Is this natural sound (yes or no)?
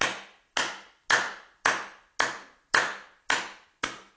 yes